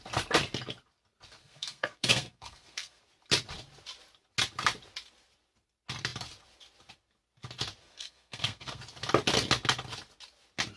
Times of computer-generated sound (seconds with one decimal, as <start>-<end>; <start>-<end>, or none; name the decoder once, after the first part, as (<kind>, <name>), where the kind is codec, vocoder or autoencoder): 1.4-3.0 (codec, SNAC); 7.8-8.8